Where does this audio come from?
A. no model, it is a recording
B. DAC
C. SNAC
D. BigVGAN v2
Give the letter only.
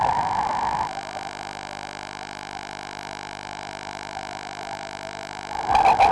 A